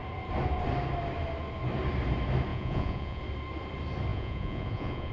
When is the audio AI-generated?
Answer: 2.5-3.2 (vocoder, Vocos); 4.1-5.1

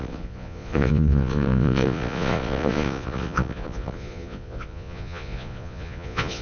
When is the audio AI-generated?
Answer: 0.0-6.4 (vocoder, Vocos)

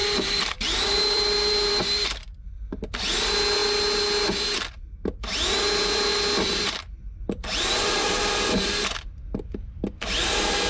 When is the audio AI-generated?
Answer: 0.0-1.7 (vocoder, BigVGAN v2)

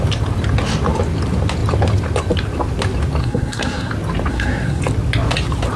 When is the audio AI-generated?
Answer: 3.2-3.9 (codec, SNAC); 4.3-4.8

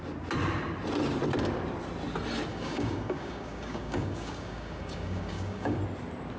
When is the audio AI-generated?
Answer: 2.5-5.8 (codec, DAC)

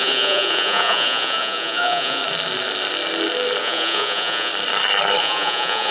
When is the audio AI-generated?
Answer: 0.0-2.2 (vocoder, Vocos); 3.6-4.5; 5.2-5.9

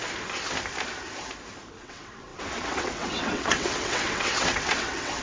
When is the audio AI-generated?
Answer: 1.7-5.2 (vocoder, WaveNeXt)